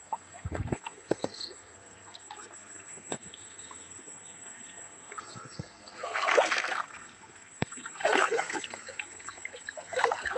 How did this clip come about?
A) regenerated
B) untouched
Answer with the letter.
A